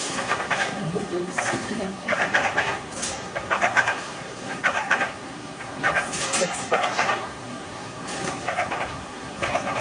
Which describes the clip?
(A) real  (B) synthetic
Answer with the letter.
B